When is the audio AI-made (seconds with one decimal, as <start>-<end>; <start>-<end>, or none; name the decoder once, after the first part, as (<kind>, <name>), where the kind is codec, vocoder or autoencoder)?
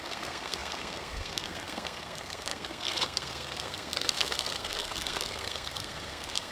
0.0-6.5 (codec, SNAC)